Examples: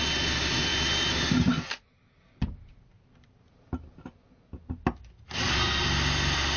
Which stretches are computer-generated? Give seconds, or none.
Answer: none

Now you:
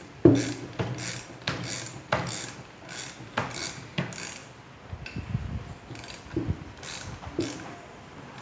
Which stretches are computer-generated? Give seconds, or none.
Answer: none

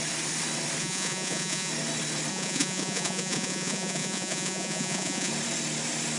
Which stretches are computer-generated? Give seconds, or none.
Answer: 0.8-1.7 (vocoder, Vocos); 2.3-5.3